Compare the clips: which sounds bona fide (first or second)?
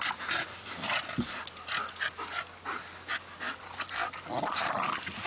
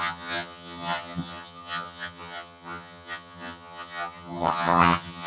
first